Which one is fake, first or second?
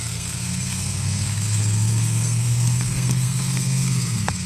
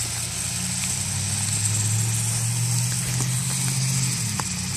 first